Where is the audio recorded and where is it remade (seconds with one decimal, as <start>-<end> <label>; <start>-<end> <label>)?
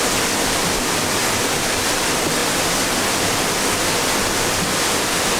0.0-5.4 recorded